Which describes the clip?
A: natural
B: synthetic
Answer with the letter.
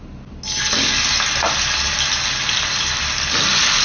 A